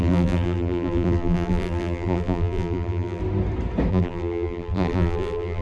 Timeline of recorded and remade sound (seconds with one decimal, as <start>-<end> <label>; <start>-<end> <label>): 0.0-3.2 remade; 3.2-3.9 recorded; 3.9-5.6 remade